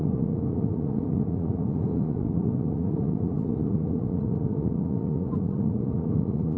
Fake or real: fake